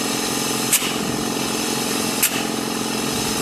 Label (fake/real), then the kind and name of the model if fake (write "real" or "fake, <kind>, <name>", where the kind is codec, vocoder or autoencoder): real